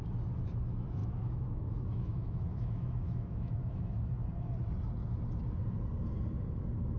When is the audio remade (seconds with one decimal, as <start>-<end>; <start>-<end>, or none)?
1.0-4.1